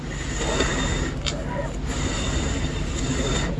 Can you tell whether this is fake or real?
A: real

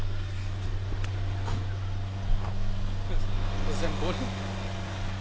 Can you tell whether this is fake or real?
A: real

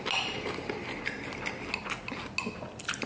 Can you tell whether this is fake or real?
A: real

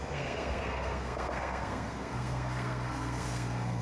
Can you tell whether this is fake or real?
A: fake